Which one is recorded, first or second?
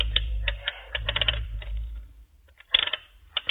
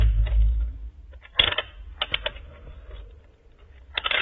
second